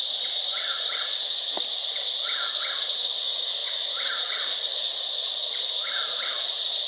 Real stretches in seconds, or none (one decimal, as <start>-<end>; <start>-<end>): 0.0-6.9